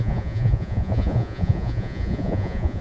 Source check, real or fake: fake